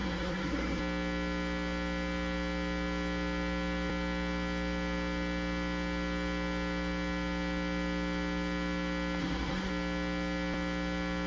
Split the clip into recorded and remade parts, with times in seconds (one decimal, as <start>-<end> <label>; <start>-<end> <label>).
0.0-0.8 remade; 0.8-9.2 recorded; 9.2-9.7 remade; 9.7-11.3 recorded